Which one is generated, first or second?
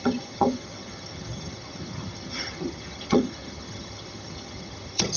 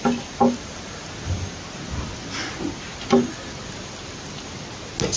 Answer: first